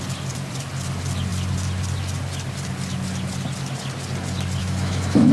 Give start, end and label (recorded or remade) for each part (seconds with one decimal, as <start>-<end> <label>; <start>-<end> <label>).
0.0-4.6 recorded; 4.6-5.3 remade